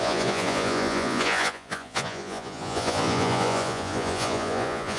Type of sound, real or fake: fake